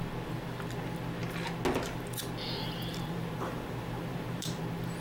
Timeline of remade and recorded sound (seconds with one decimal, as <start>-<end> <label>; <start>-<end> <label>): 0.0-2.9 recorded; 2.9-4.6 remade; 4.6-5.0 recorded

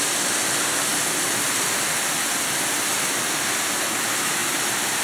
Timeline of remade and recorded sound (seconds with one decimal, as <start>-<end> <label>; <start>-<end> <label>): 0.0-4.4 recorded; 4.4-5.0 remade